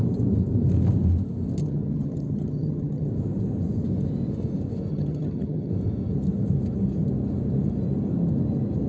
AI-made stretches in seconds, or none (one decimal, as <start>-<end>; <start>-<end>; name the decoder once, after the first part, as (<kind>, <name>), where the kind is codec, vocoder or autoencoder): 1.6-3.1 (vocoder, HiFi-GAN); 4.9-5.7